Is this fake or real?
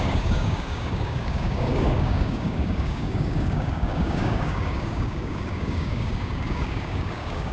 fake